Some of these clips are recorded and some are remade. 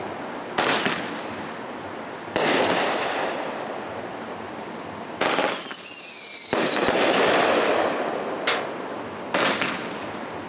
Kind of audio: recorded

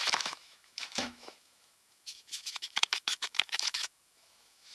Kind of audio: remade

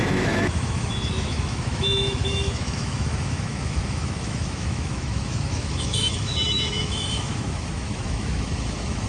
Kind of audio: remade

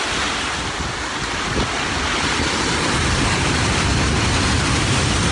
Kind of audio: recorded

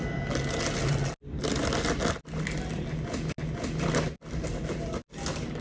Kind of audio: recorded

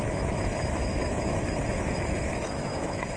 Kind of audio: remade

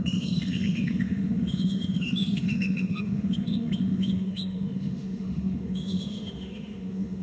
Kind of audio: remade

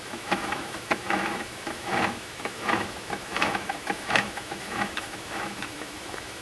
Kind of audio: remade